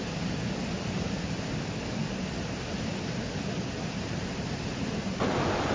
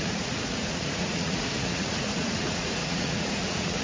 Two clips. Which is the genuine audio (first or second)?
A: first